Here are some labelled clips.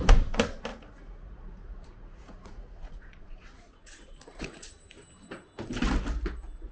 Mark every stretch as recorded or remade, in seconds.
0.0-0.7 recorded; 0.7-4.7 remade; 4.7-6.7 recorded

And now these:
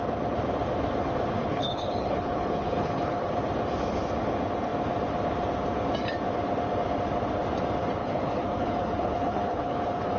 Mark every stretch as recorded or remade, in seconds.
0.0-1.4 recorded; 1.4-3.3 remade; 3.3-8.0 recorded; 8.0-10.2 remade

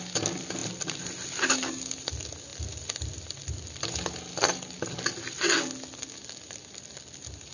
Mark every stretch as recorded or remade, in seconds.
0.0-0.6 recorded; 0.6-2.1 remade; 2.1-2.5 recorded; 2.5-4.8 remade; 4.8-6.2 recorded; 6.2-7.5 remade